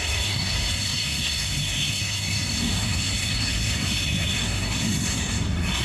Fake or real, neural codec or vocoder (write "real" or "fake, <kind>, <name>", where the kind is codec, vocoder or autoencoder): fake, codec, SNAC